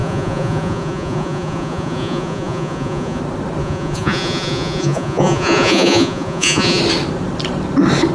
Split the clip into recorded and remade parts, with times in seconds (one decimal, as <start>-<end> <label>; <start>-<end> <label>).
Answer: 0.0-3.2 remade; 3.2-3.6 recorded; 3.6-6.8 remade; 6.8-8.1 recorded